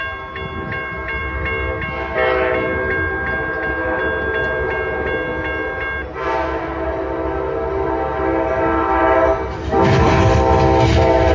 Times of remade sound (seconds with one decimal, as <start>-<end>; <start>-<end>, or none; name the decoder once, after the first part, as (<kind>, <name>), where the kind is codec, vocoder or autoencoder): none